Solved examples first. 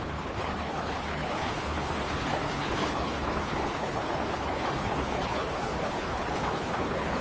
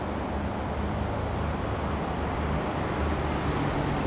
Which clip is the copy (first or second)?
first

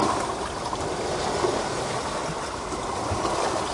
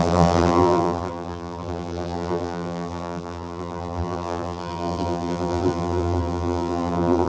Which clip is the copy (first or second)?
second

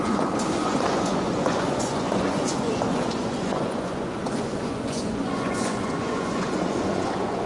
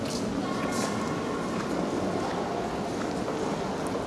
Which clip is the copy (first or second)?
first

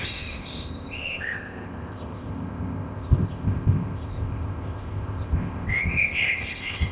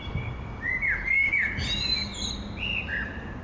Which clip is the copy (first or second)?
first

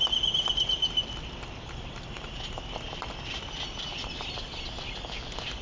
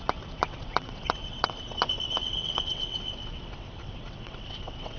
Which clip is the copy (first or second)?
second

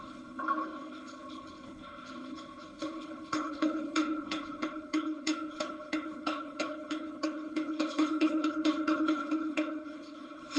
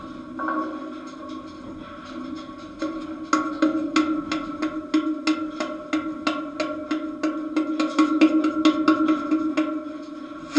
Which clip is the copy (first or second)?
first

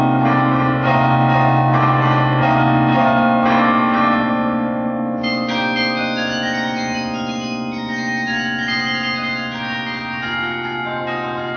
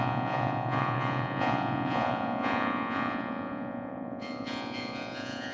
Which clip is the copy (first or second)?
second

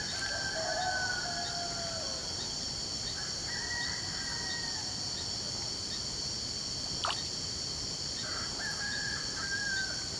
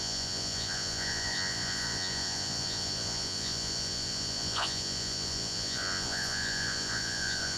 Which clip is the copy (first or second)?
second